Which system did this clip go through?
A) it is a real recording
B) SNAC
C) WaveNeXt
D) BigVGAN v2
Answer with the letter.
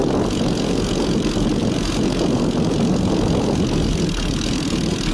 A